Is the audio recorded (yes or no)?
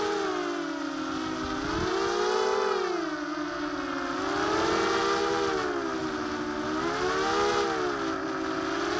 yes